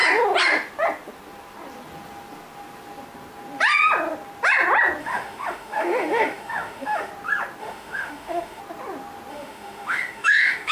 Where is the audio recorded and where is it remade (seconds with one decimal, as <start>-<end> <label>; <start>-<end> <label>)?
0.0-5.0 recorded; 5.0-7.1 remade; 7.1-7.6 recorded; 7.6-8.6 remade; 8.6-9.3 recorded; 9.3-10.7 remade